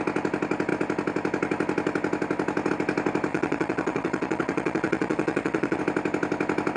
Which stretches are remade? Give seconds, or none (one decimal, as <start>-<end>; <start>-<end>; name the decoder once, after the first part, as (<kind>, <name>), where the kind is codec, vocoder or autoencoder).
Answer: 3.3-5.8 (vocoder, WaveNeXt)